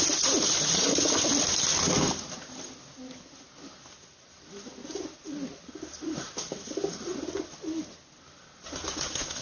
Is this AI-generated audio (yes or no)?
no